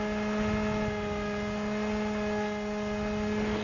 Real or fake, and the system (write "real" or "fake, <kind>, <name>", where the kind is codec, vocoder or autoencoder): real